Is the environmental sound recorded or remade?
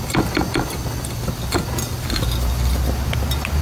recorded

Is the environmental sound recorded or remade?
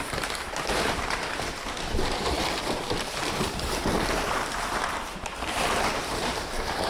remade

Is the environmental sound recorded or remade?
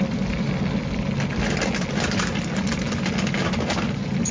recorded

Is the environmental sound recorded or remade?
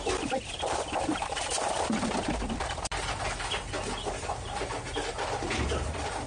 recorded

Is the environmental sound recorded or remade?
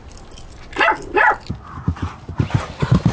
recorded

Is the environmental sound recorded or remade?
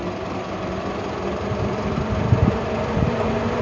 remade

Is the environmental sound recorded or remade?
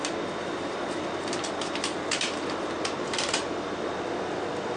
remade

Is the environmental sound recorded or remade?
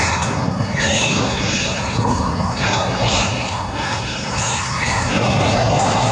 remade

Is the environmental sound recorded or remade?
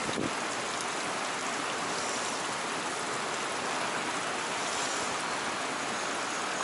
recorded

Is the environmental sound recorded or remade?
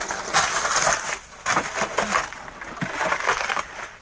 recorded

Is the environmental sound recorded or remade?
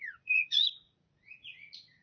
remade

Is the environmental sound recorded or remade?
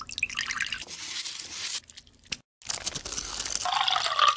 recorded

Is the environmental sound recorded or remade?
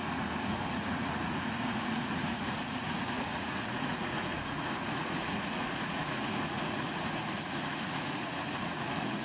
remade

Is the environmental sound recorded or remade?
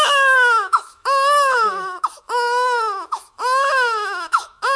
remade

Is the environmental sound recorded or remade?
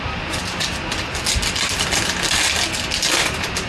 recorded